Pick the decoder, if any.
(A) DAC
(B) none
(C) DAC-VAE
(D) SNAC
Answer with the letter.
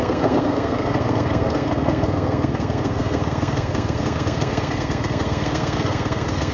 D